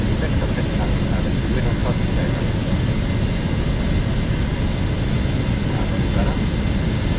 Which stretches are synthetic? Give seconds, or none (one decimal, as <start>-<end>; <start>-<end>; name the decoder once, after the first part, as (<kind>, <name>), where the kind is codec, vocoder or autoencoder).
none